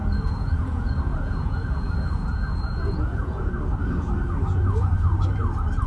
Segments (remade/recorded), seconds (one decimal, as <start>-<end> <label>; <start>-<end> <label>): 0.0-3.5 remade; 3.5-5.9 recorded

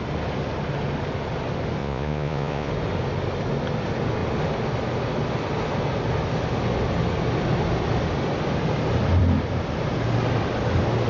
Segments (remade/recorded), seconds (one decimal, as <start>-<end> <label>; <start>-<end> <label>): 0.0-1.8 recorded; 1.8-2.7 remade; 2.7-11.1 recorded

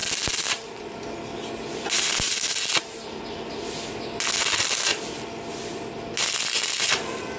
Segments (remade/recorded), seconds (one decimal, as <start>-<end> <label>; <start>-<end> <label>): 0.0-7.4 recorded

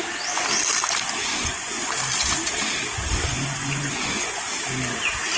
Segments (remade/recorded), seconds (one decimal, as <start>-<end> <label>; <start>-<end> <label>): 0.0-1.3 recorded; 1.3-1.9 remade; 1.9-3.3 recorded; 3.3-4.5 remade; 4.5-5.4 recorded

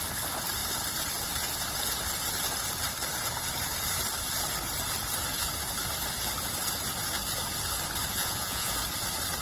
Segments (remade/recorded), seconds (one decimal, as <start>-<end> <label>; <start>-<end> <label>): 0.0-8.1 recorded; 8.1-8.7 remade; 8.7-9.4 recorded

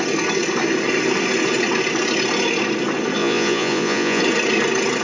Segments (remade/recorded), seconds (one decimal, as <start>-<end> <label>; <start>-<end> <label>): 0.0-3.2 recorded; 3.2-4.2 remade; 4.2-5.0 recorded